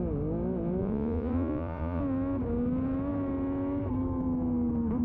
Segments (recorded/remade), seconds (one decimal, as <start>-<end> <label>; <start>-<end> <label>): 0.0-0.8 recorded; 0.8-2.0 remade; 2.0-5.0 recorded